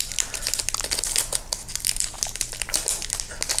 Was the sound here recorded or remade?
recorded